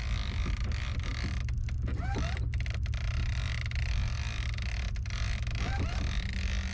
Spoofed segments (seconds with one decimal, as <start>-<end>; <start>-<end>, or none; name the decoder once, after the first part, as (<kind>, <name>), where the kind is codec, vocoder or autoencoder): none